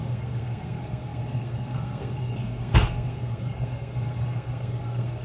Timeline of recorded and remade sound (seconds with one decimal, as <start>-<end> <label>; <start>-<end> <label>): 0.0-5.2 remade